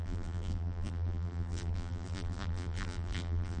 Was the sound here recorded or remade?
remade